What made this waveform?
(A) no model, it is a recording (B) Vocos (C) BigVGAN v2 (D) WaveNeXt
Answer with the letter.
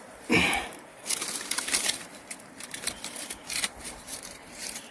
C